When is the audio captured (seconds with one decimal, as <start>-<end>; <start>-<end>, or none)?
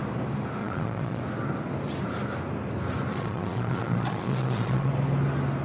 0.0-0.6; 1.2-3.1; 4.9-5.6